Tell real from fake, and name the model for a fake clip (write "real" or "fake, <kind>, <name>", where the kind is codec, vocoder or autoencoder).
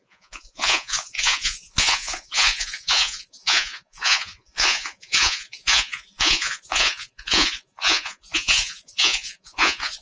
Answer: fake, vocoder, Vocos